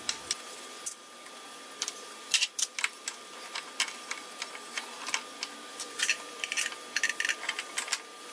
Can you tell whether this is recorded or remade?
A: remade